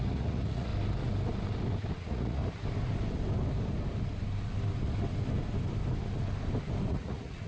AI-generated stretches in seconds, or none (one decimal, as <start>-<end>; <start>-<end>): 0.0-0.7; 2.0-2.4; 6.9-7.5